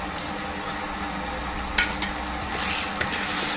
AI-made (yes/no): no